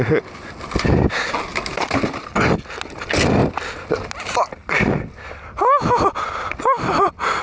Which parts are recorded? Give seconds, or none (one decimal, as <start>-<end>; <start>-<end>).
0.0-7.4